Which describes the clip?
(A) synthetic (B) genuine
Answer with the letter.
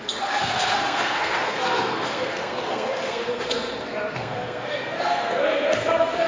A